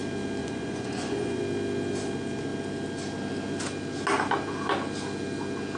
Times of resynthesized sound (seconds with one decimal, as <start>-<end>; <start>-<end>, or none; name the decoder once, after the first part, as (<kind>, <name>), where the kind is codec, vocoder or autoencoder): 0.4-1.4 (vocoder, Vocos)